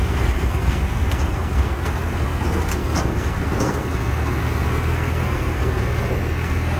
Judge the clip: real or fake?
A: fake